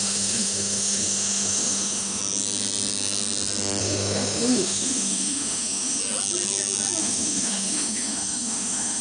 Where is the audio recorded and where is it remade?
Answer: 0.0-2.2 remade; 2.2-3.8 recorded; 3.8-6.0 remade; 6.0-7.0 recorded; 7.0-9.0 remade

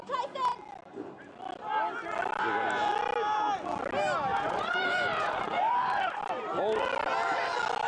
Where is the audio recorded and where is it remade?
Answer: 0.0-4.3 recorded; 4.3-6.2 remade; 6.2-7.9 recorded

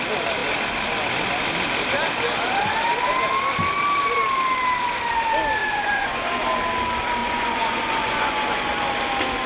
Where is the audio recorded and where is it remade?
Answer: 0.0-5.6 recorded; 5.6-6.2 remade; 6.2-7.2 recorded; 7.2-8.7 remade; 8.7-9.5 recorded